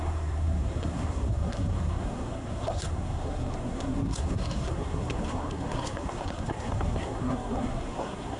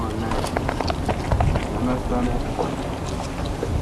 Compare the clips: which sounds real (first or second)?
second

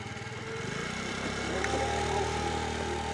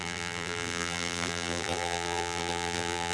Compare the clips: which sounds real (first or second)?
first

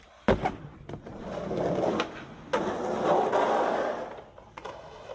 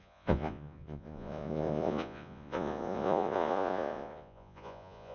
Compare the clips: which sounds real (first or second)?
first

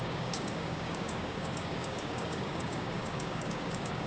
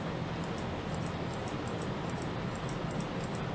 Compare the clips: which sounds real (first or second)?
second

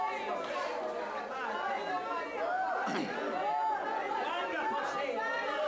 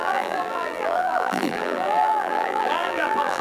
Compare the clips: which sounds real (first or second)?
first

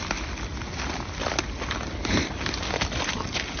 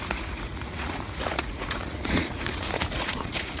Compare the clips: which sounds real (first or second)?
first